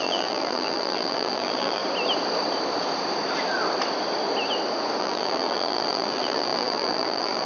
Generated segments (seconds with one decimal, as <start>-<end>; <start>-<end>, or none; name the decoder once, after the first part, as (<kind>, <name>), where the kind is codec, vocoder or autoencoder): 0.0-1.8 (vocoder, BigVGAN v2); 5.0-7.5